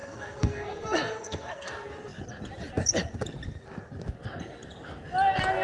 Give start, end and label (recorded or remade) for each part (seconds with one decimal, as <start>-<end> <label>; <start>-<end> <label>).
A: 0.0-1.7 remade; 1.7-5.6 recorded